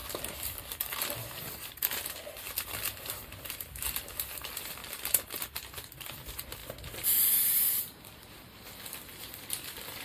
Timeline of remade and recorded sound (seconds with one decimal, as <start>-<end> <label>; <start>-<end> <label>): 0.0-0.7 recorded; 0.7-4.8 remade; 4.8-5.4 recorded; 5.4-10.0 remade